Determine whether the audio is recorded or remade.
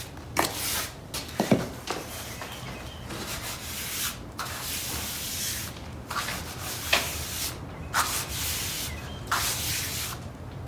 recorded